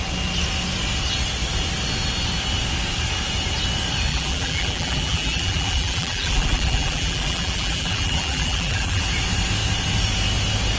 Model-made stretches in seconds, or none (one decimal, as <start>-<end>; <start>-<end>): 4.1-9.0